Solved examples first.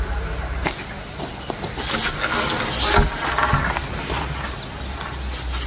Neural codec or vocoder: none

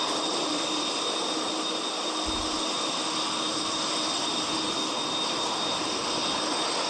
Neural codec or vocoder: none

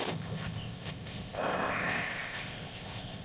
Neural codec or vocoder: codec, ZipCodec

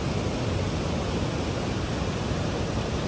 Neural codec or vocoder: none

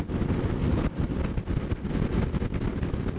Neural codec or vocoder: none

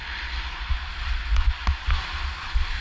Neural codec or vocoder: none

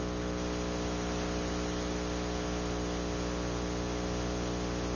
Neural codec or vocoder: none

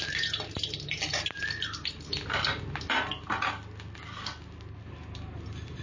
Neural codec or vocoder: none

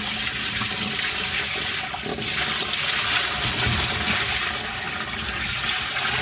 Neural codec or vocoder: none